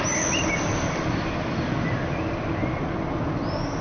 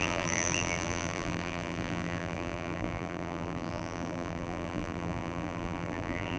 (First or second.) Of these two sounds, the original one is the first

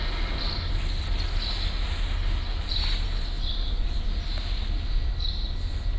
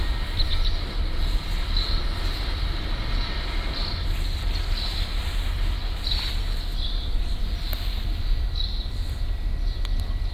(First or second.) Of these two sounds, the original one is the first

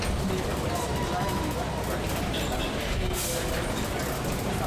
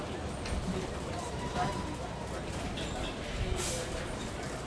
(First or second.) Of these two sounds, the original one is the first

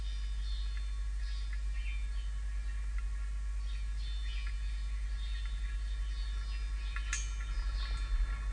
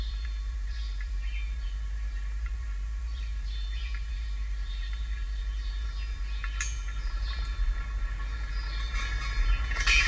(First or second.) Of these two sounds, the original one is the first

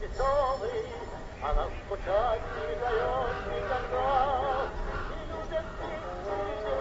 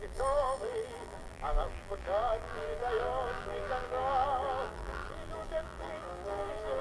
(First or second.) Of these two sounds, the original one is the first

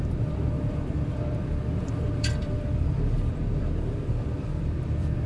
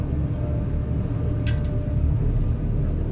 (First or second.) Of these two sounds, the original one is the second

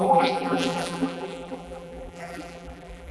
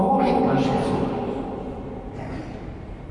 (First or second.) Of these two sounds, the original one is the second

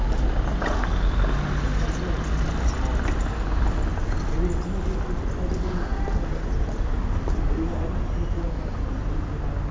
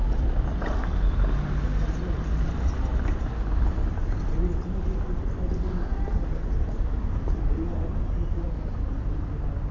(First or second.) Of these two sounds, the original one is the first